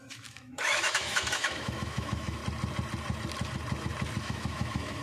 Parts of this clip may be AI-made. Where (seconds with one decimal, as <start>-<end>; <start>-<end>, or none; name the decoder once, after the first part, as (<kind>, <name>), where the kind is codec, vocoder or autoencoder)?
0.0-2.4 (autoencoder, DAC-VAE); 4.2-5.0